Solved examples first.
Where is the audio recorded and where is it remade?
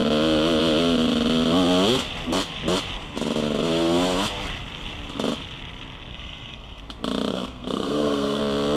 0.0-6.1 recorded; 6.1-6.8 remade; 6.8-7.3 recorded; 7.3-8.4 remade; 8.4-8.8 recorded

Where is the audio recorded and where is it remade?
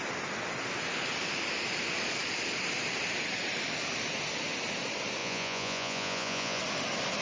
0.0-5.2 recorded; 5.2-6.6 remade; 6.6-7.2 recorded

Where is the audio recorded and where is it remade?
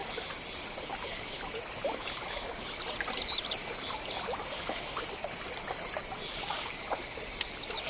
0.0-7.9 recorded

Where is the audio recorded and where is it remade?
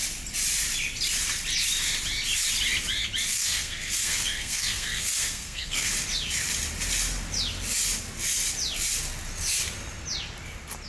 0.0-3.3 recorded; 3.3-5.9 remade; 5.9-10.9 recorded